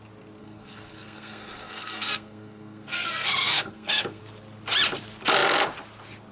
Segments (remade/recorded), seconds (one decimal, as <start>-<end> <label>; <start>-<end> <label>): 0.0-0.4 recorded; 0.4-4.2 remade; 4.2-6.3 recorded